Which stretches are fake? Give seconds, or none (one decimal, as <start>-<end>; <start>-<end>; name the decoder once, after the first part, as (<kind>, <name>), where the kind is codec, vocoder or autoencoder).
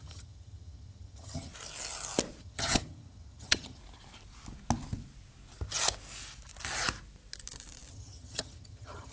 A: 0.0-1.5 (vocoder, HiFi-GAN); 2.4-3.8; 7.9-9.1